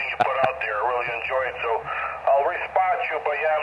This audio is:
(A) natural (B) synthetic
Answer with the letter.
B